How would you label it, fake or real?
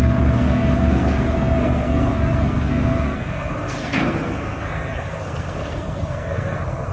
fake